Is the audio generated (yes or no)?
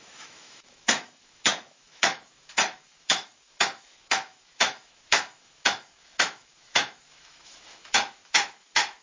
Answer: yes